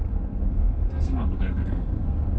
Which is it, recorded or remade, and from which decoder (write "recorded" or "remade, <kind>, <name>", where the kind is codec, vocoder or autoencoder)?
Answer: remade, codec, SNAC